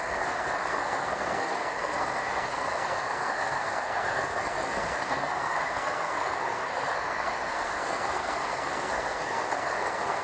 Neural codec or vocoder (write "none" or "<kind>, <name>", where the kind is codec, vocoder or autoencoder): codec, SNAC